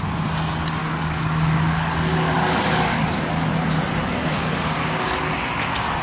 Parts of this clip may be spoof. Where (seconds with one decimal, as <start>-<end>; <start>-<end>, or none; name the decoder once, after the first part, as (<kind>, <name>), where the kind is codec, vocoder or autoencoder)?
0.8-3.5 (codec, DAC); 4.0-5.3

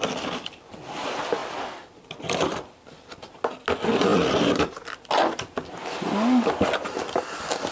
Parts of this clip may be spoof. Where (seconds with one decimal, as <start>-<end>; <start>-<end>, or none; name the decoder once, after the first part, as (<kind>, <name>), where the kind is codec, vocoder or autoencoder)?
none

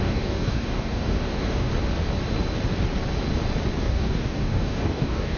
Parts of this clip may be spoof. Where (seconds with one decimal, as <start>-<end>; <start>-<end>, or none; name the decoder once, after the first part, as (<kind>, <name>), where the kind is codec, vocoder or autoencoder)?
0.0-1.7 (codec, DAC); 3.8-5.4

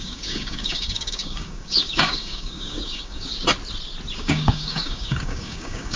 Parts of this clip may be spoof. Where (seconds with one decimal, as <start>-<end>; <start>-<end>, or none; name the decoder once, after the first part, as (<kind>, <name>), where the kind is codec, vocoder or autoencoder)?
0.0-3.3 (codec, DAC); 4.2-6.0

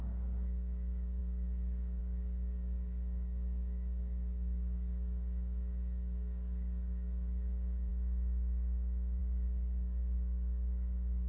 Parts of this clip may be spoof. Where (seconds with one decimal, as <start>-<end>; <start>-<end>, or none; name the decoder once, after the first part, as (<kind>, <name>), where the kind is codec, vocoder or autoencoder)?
0.0-7.9 (codec, DAC); 9.2-11.3

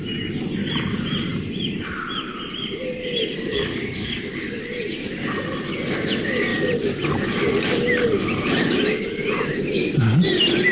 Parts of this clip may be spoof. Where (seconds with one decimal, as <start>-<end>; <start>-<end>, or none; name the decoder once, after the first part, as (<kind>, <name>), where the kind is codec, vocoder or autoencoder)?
3.5-4.6 (codec, DAC)

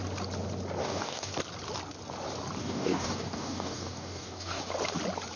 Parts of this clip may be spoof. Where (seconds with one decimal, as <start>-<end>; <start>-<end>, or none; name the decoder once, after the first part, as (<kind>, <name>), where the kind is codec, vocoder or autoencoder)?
0.8-1.3 (codec, DAC); 2.6-4.6

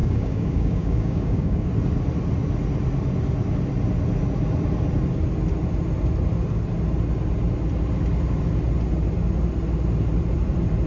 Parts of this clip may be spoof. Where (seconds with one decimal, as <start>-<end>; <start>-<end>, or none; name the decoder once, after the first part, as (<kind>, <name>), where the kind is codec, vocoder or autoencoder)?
0.0-1.7 (codec, DAC)